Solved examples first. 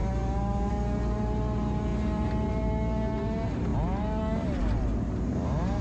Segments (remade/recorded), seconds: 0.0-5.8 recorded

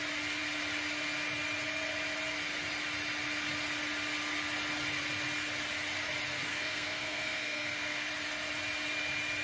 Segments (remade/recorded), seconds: 0.0-6.5 recorded; 6.5-8.1 remade; 8.1-9.4 recorded

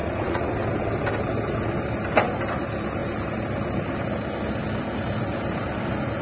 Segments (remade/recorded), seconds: 0.0-0.5 remade; 0.5-6.2 recorded

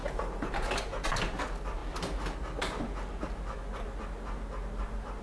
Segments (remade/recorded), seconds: 0.0-5.2 recorded

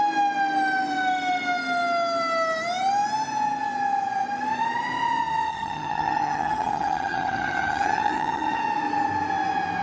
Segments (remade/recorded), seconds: 0.0-5.5 recorded; 5.5-8.6 remade; 8.6-9.8 recorded